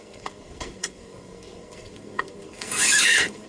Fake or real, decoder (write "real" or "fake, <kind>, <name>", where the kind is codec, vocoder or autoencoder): fake, codec, SNAC